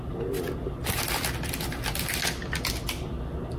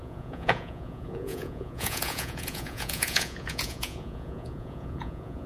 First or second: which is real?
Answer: first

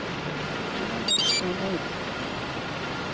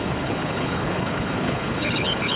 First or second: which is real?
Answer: first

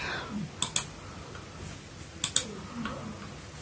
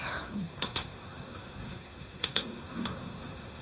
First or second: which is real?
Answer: first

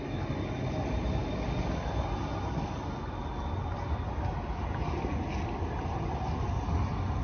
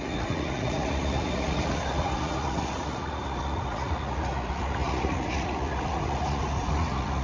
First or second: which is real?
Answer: first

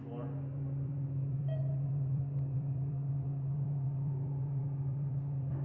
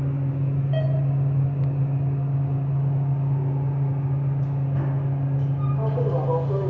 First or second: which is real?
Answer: second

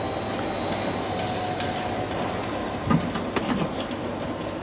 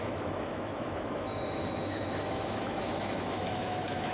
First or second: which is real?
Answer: first